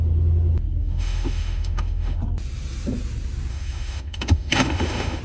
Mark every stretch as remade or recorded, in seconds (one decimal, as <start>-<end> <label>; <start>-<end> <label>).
0.0-0.8 recorded; 0.8-2.2 remade; 2.2-3.5 recorded; 3.5-5.2 remade